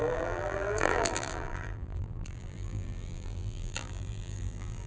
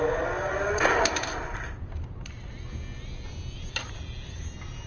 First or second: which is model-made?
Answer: first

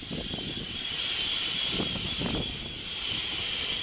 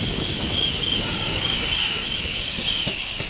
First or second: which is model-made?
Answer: second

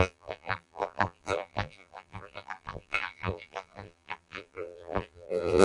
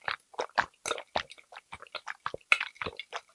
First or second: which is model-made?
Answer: first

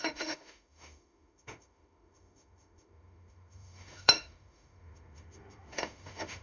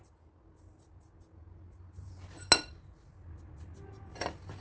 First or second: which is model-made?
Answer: first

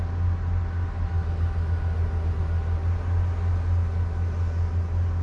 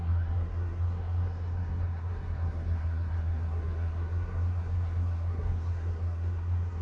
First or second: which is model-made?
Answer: second